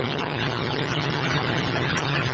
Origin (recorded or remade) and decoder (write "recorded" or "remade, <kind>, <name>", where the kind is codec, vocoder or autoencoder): remade, vocoder, HiFi-GAN